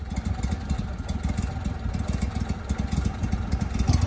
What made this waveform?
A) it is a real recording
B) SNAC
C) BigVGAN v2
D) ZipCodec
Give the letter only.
A